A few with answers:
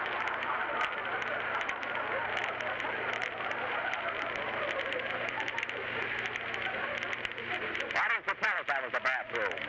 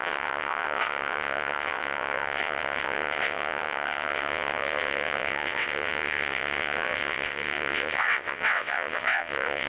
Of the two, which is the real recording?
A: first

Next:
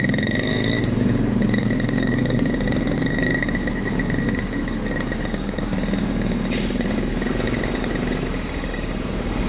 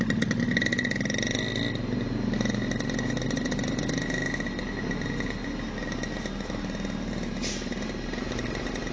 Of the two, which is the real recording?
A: second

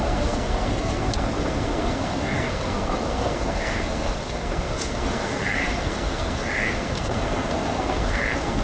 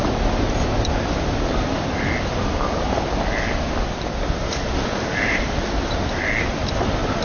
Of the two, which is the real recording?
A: second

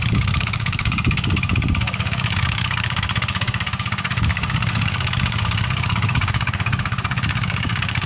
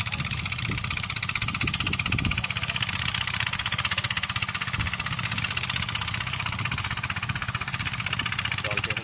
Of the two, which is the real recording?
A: second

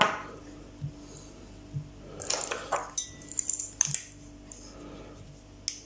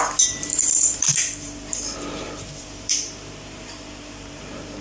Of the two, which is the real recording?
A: first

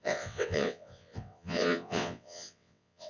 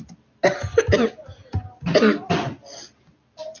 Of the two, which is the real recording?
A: second